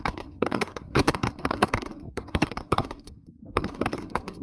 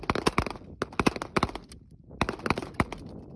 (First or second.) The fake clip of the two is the first